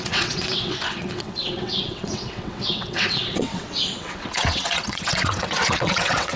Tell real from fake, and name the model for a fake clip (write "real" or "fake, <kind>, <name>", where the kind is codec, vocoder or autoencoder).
fake, vocoder, WaveNeXt